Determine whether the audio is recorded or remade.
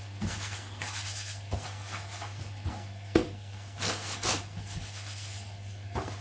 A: remade